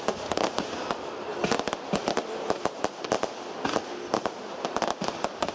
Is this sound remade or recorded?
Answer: recorded